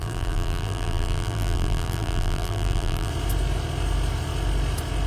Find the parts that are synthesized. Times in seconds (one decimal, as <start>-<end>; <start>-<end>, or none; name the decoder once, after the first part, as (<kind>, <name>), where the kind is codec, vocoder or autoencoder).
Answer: 0.0-3.1 (vocoder, BigVGAN v2)